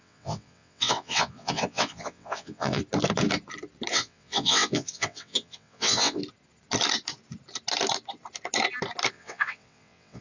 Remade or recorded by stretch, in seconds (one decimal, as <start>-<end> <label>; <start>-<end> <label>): 0.0-2.8 remade; 2.8-3.9 recorded; 3.9-6.2 remade; 6.2-9.1 recorded; 9.1-10.2 remade